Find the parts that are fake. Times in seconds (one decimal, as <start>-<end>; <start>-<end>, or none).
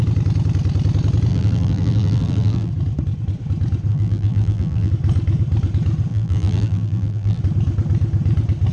1.3-2.7; 3.9-4.9; 6.1-7.4